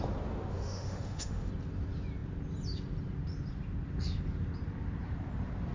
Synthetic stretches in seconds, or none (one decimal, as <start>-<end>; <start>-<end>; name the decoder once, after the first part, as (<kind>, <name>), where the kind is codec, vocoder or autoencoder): 0.5-1.5 (autoencoder, DAC-VAE)